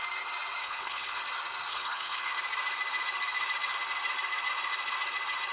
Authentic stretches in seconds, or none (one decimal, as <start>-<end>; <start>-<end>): 0.0-0.6; 1.2-1.7; 2.3-5.5